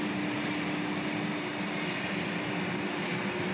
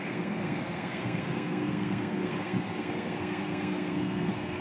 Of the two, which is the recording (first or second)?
first